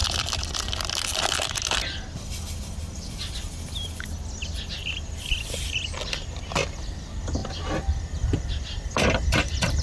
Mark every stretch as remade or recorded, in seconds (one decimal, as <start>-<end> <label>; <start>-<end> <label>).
0.0-9.8 recorded